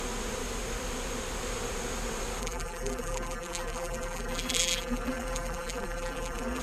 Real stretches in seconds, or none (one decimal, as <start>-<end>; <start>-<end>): 0.0-2.4